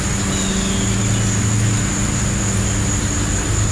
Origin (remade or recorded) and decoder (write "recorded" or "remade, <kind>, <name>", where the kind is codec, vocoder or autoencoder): recorded